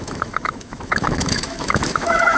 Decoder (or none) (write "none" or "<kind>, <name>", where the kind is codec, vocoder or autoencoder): autoencoder, DAC-VAE